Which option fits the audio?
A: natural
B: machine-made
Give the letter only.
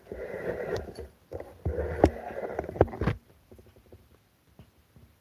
B